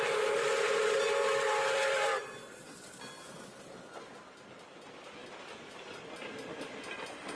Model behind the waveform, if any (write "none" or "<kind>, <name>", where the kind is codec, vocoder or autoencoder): none